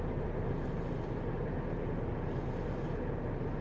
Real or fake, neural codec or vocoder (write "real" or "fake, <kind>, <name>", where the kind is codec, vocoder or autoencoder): real